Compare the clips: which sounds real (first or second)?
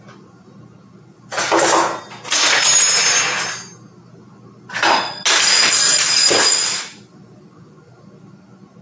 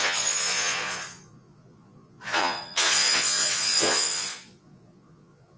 first